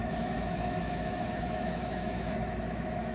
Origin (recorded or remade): remade